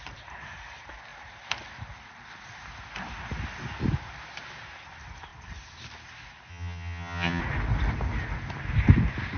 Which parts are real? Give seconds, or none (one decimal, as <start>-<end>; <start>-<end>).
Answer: 0.0-6.5; 7.4-9.4